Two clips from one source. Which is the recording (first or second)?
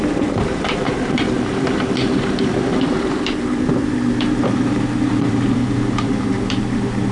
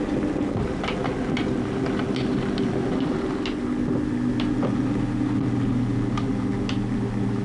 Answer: second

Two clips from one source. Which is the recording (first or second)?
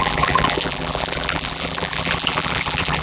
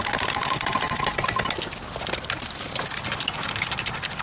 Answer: second